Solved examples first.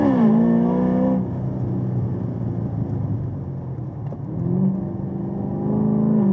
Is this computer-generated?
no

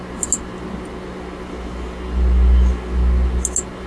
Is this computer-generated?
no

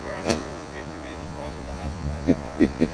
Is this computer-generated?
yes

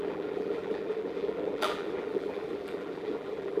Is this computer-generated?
yes